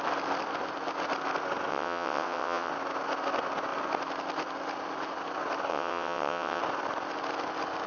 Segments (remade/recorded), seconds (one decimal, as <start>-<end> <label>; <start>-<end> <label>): 0.0-1.7 recorded; 1.7-2.7 remade; 2.7-5.7 recorded; 5.7-6.6 remade; 6.6-7.9 recorded

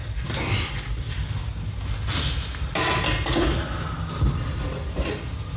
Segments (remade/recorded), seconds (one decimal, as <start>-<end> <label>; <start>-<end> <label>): 0.0-5.6 recorded

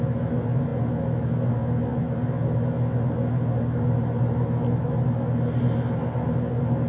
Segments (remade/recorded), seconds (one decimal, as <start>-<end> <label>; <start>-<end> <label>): 0.0-6.9 recorded

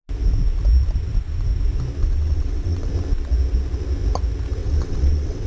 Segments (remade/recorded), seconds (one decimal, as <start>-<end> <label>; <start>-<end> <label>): 0.0-2.0 recorded; 2.0-2.9 remade; 2.9-4.6 recorded; 4.6-5.5 remade

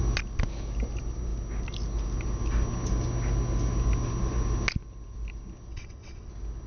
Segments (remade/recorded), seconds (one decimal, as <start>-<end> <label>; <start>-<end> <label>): 0.0-5.7 recorded; 5.7-6.3 remade; 6.3-6.7 recorded

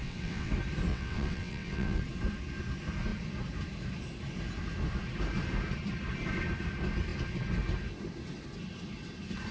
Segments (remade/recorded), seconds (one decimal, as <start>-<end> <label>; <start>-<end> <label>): 0.0-0.5 remade; 0.5-0.9 recorded; 0.9-2.0 remade; 2.0-9.5 recorded